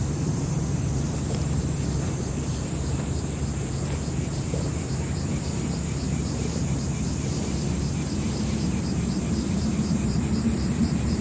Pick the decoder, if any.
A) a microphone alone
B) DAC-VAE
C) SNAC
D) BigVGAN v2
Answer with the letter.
D